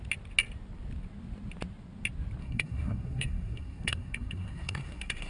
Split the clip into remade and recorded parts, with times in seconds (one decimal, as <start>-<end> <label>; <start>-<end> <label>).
0.0-2.4 recorded; 2.4-5.3 remade